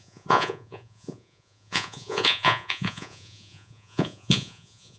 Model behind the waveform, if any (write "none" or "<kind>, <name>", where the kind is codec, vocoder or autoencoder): vocoder, Vocos